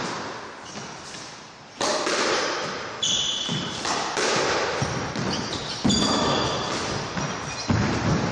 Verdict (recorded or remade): recorded